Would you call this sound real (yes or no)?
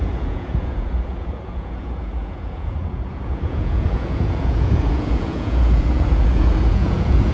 no